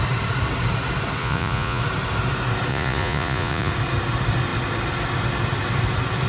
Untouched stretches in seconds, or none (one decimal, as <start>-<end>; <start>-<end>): 0.0-1.2; 1.8-2.7; 3.7-6.3